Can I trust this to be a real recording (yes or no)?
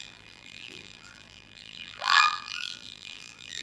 no